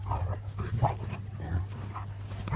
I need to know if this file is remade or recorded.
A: recorded